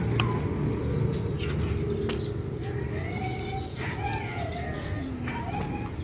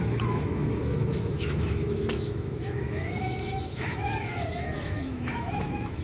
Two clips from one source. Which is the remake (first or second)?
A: second